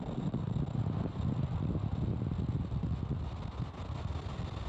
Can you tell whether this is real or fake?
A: real